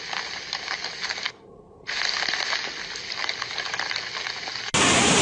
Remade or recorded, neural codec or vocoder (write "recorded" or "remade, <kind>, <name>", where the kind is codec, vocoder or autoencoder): recorded